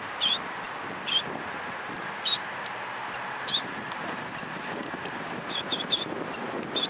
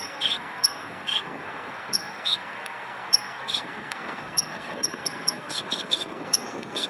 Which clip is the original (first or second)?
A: first